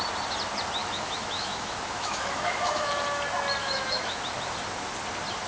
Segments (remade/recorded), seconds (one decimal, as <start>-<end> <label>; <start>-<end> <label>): 0.0-0.8 recorded; 0.8-2.9 remade; 2.9-3.6 recorded; 3.6-4.2 remade; 4.2-5.5 recorded

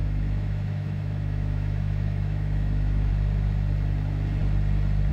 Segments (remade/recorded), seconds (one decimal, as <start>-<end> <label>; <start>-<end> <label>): 0.0-3.1 remade; 3.1-5.1 recorded

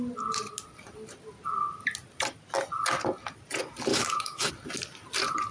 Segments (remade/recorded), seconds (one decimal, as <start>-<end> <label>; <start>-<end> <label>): 0.0-3.9 recorded; 3.9-4.5 remade; 4.5-5.5 recorded